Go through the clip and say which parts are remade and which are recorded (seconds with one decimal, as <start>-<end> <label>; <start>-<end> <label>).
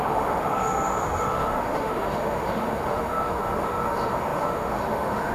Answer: 0.0-5.3 remade